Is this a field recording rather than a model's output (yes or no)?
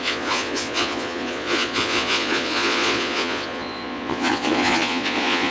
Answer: no